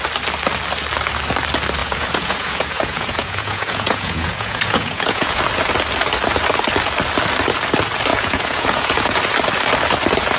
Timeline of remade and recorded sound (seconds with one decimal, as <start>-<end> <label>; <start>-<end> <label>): 0.0-1.8 recorded; 1.8-5.4 remade; 5.4-8.1 recorded; 8.1-9.2 remade; 9.2-10.4 recorded